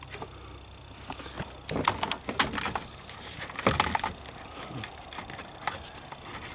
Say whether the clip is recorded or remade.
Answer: recorded